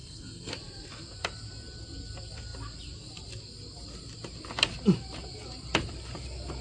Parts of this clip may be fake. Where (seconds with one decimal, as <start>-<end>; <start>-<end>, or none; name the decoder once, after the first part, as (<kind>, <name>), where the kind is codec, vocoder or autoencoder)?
0.0-0.5 (codec, SNAC)